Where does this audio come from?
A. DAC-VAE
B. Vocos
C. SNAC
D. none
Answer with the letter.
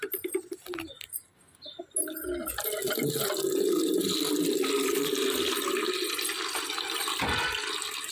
D